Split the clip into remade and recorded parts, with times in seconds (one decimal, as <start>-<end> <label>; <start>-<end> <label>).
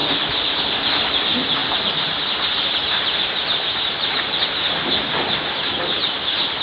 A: 0.0-6.6 recorded